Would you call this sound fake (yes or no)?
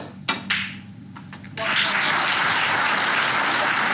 no